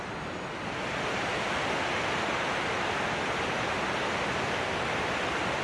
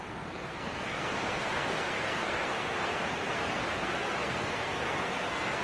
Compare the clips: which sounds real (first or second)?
first